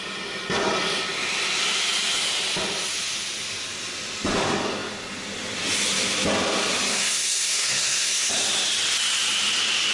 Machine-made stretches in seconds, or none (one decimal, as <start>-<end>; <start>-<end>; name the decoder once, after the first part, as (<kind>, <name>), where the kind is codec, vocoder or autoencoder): 6.9-8.3 (codec, SNAC)